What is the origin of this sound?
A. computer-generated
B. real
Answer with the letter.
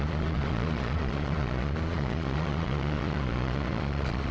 A